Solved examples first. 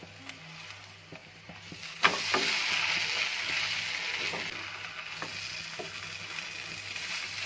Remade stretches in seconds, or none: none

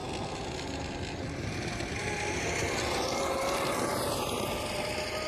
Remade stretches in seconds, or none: none

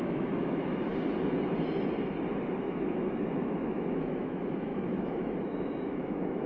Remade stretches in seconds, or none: 0.0-0.9 (autoencoder, DAC-VAE); 2.6-6.5

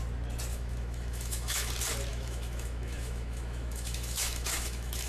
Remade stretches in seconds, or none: 0.5-1.7 (autoencoder, DAC-VAE); 2.1-5.1